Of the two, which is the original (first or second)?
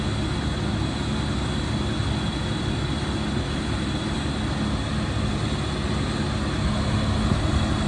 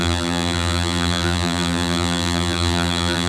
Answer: first